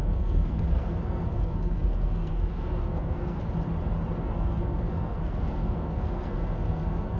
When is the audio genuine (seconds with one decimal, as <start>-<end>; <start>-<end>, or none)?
3.4-4.2